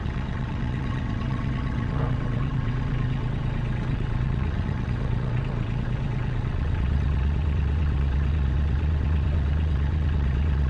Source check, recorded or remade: remade